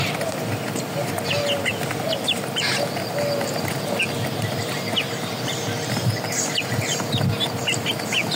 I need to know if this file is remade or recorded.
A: recorded